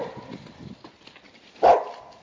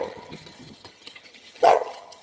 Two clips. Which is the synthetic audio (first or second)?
second